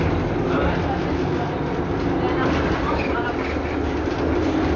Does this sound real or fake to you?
real